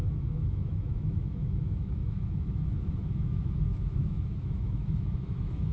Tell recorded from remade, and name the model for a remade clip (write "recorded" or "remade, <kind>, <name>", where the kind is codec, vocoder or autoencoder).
remade, autoencoder, DAC-VAE